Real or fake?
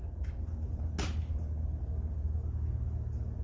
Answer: real